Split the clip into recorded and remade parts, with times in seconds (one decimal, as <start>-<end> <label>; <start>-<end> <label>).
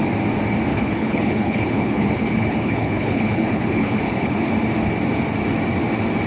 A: 0.0-0.7 recorded; 0.7-4.5 remade; 4.5-6.3 recorded